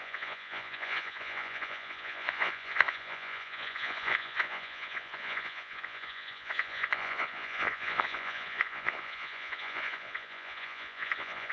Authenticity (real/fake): fake